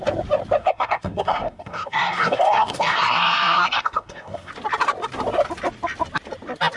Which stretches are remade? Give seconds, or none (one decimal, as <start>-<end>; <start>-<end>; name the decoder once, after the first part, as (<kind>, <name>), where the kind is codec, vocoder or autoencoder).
0.6-4.5 (codec, SNAC)